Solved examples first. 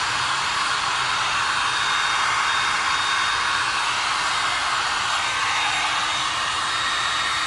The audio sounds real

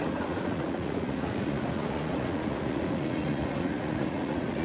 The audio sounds fake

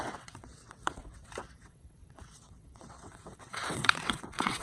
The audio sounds fake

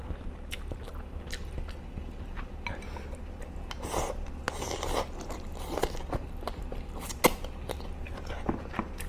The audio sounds real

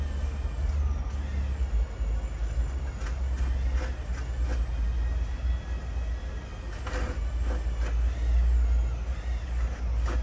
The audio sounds real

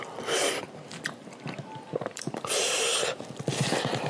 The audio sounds real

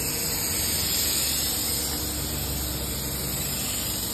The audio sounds real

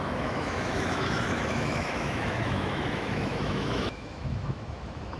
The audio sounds fake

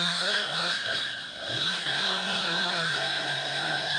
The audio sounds fake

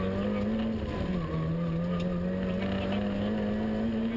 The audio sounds real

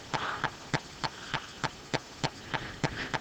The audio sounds real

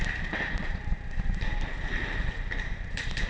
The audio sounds real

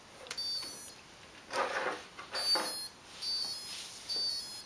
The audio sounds real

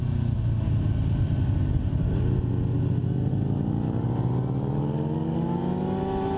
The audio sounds real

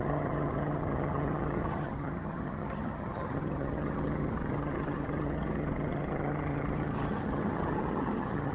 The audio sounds fake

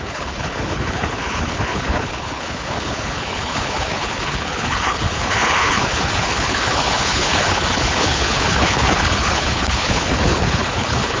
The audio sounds fake